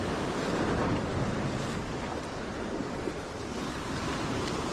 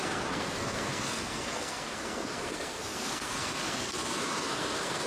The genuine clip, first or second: first